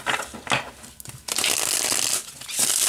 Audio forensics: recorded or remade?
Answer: recorded